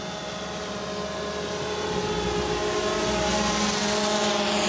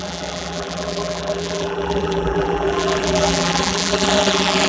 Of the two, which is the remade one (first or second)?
second